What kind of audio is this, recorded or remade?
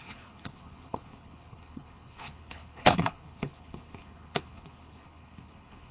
remade